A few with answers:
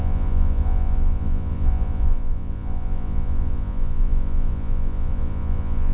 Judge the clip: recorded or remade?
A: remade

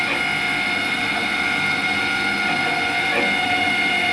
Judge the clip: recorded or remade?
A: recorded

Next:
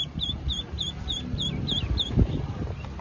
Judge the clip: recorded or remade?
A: recorded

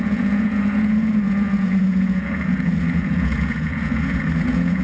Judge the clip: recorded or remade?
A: remade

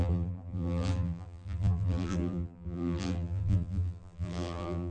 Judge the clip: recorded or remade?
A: remade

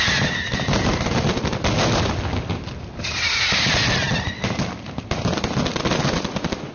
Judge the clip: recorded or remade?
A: recorded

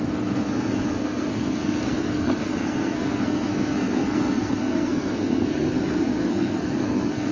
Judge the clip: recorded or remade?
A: remade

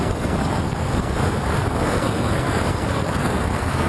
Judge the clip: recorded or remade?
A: remade